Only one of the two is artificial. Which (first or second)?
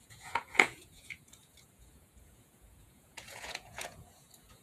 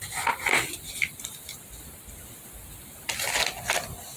first